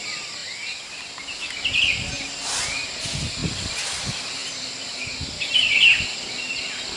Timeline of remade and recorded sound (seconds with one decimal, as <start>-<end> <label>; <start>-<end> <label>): 0.0-7.0 recorded